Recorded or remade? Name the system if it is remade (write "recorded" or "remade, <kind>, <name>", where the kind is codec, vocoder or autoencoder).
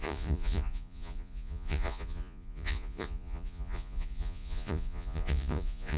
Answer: remade, vocoder, Vocos